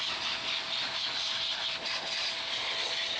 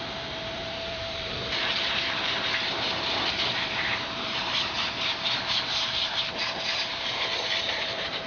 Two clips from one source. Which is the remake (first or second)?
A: second